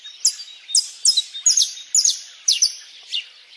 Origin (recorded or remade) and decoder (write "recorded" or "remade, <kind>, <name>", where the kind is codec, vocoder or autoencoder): recorded